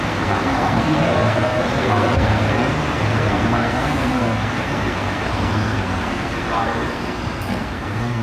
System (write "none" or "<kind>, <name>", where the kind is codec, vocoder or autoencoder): codec, SNAC